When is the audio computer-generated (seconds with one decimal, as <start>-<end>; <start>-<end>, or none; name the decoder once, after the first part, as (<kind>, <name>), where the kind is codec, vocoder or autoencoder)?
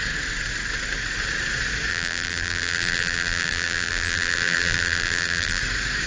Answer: 1.9-5.6 (vocoder, BigVGAN v2)